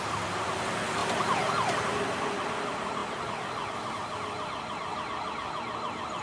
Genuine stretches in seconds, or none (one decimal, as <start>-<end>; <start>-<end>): 0.0-6.2